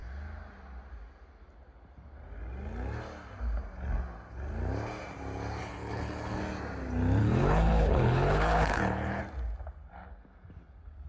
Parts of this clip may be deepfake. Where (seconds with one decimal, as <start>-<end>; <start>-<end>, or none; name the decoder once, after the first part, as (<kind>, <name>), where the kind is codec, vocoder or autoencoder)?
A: 5.6-6.4 (codec, HILCodec); 7.2-9.2